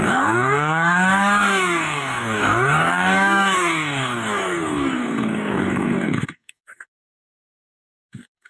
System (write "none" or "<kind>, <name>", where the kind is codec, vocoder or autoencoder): codec, DAC